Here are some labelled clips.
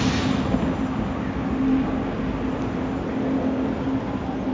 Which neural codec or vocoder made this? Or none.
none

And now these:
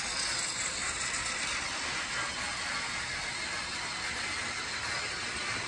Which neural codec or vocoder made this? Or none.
none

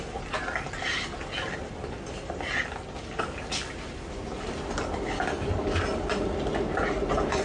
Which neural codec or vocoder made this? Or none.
none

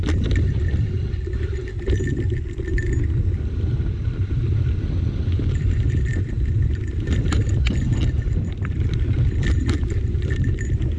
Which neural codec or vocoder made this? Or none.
vocoder, BigVGAN v2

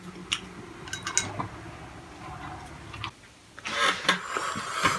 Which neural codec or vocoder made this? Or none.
none